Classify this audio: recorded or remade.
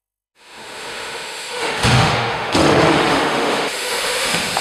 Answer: remade